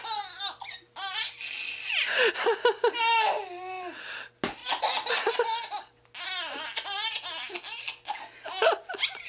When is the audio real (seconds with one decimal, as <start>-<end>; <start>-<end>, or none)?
0.0-9.3